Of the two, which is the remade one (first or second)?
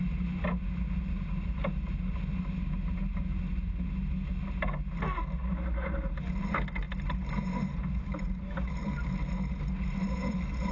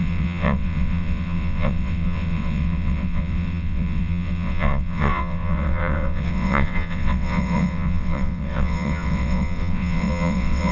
second